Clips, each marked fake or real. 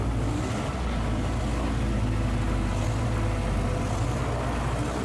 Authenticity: real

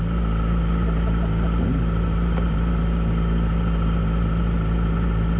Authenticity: real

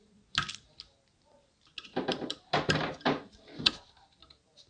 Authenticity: real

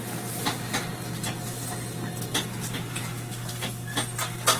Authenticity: real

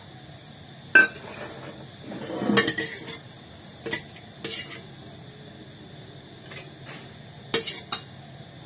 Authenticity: real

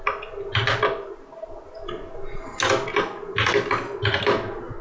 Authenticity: real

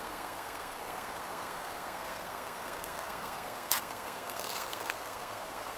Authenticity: fake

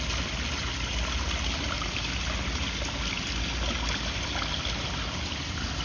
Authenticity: real